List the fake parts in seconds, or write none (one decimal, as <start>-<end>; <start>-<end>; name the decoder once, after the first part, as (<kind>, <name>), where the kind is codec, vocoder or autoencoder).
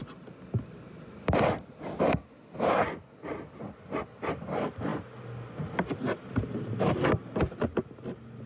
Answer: none